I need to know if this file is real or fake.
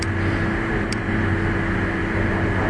real